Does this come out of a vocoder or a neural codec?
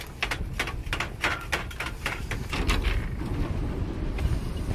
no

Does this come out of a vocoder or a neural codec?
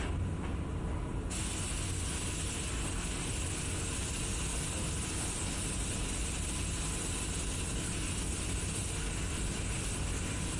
no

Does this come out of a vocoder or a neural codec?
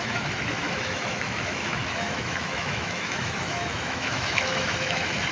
yes